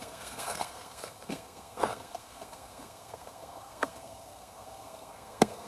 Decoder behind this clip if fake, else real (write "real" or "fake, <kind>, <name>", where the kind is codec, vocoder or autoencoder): fake, codec, SNAC